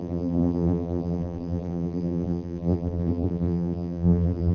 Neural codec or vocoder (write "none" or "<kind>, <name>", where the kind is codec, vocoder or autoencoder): vocoder, BigVGAN v2